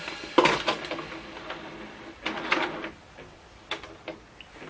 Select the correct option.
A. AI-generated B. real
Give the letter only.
B